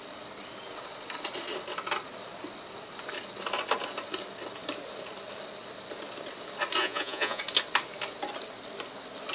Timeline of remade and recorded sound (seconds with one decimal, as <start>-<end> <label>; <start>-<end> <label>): 0.0-6.8 recorded; 6.8-7.4 remade; 7.4-9.3 recorded